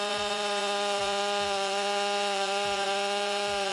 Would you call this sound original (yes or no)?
no